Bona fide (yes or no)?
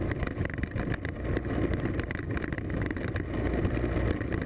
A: yes